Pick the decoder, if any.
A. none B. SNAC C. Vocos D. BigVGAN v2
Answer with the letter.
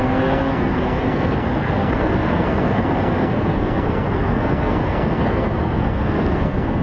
B